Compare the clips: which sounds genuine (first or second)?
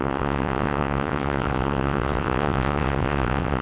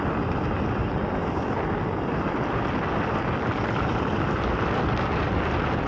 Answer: second